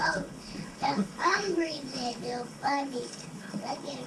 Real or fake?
fake